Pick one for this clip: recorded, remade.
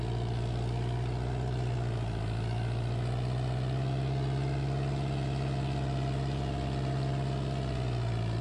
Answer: recorded